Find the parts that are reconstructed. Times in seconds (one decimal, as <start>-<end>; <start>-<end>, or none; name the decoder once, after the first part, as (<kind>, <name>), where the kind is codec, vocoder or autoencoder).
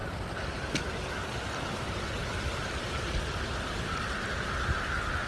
none